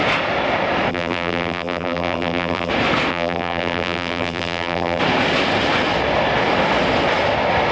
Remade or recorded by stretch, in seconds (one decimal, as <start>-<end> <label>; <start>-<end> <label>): 0.0-0.9 recorded; 0.9-2.7 remade; 2.7-3.1 recorded; 3.1-5.0 remade; 5.0-7.7 recorded